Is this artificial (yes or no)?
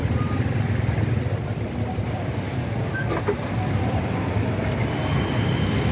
no